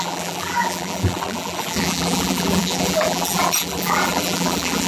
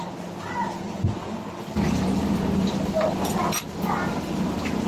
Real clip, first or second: second